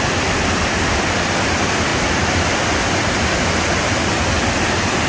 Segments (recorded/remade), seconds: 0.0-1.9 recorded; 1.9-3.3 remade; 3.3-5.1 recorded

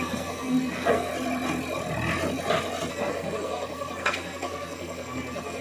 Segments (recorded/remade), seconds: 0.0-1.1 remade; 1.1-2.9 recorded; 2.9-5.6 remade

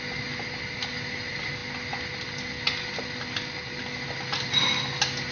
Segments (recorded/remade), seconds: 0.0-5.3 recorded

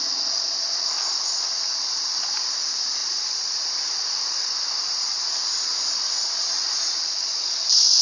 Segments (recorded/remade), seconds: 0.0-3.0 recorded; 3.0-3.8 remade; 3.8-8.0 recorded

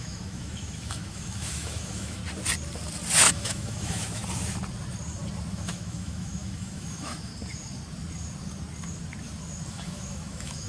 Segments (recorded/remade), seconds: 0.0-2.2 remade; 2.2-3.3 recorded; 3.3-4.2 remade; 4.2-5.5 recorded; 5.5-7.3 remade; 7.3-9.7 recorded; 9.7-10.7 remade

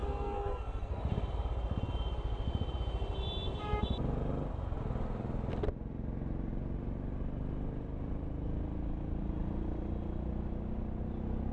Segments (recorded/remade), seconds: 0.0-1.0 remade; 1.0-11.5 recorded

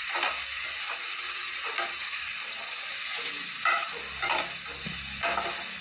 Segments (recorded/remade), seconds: 0.0-5.8 recorded

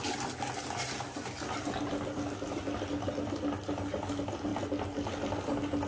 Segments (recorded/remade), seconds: 0.0-5.9 recorded